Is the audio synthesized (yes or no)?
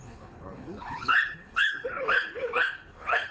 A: yes